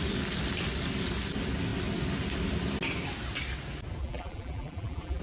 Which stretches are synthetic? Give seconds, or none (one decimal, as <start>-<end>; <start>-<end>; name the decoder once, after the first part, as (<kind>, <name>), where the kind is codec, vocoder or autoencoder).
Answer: 4.0-5.2 (vocoder, BigVGAN v2)